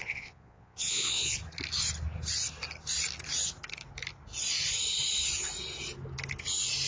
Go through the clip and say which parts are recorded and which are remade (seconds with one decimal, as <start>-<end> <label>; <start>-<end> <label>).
0.0-1.4 remade; 1.4-6.9 recorded